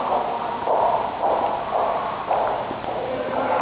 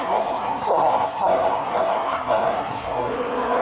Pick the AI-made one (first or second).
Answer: second